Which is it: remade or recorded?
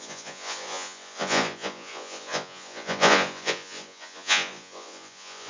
remade